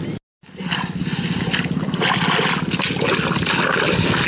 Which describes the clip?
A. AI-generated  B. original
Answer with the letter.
B